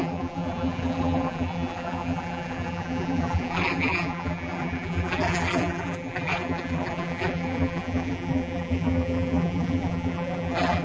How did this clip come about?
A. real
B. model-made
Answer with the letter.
B